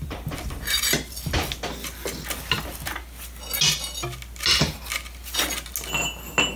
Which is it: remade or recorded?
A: recorded